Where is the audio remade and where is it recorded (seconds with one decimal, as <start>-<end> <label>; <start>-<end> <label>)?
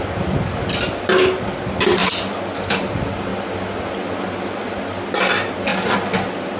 0.0-6.6 recorded